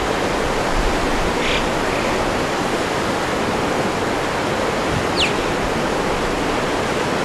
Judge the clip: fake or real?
real